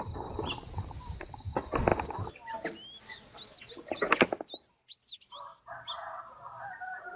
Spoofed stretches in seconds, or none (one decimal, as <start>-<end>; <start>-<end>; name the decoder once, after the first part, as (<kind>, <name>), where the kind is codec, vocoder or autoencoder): none